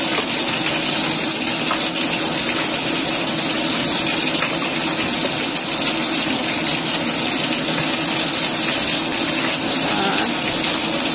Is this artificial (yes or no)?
no